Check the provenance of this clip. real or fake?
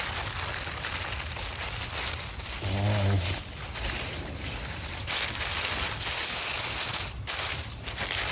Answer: real